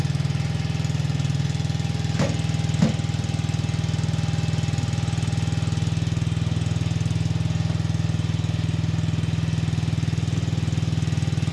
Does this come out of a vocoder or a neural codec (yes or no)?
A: no